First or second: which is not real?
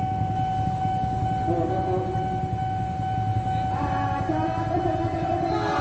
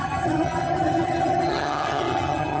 second